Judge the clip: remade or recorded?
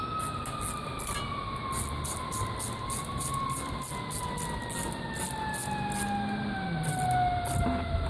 recorded